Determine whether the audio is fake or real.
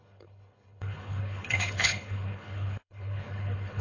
fake